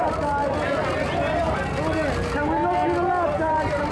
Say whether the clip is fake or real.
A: real